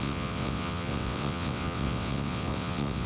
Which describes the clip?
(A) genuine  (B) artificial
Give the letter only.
B